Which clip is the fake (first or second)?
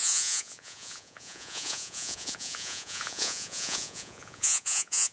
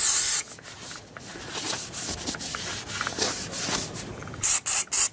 first